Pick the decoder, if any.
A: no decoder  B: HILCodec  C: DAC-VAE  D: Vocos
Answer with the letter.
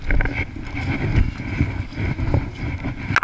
A